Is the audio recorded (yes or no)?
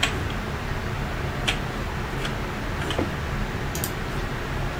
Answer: yes